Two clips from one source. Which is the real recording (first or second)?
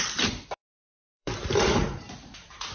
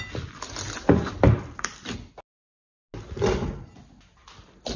second